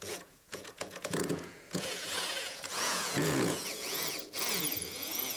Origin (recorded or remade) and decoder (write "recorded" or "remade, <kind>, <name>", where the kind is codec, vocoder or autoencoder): remade, vocoder, Vocos